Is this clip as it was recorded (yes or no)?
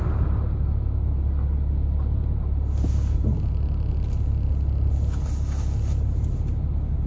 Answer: yes